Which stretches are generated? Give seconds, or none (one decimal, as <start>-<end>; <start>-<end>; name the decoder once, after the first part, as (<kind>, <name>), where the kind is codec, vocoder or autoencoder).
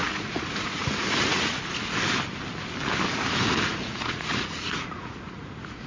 0.0-1.6 (vocoder, Vocos); 3.7-5.9